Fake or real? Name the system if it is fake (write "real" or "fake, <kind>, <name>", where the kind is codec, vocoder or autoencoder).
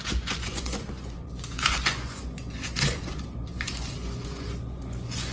fake, vocoder, Vocos